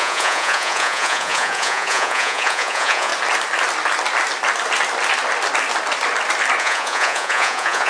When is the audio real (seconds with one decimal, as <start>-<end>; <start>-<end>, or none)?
3.1-6.6